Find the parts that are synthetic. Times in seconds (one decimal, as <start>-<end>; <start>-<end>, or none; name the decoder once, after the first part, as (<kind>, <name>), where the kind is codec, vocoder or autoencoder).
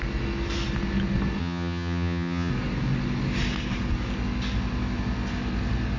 1.4-2.5 (vocoder, HiFi-GAN)